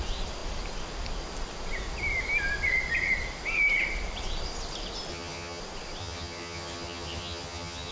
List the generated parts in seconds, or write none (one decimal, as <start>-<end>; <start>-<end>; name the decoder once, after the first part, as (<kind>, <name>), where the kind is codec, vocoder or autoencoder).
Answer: 5.1-5.6 (vocoder, HiFi-GAN); 6.0-7.9